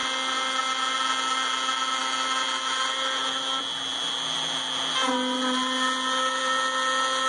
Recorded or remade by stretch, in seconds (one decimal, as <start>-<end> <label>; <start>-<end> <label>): 0.0-7.3 recorded